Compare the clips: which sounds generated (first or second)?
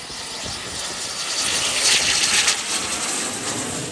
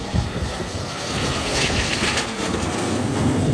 second